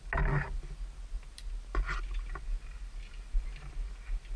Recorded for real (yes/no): yes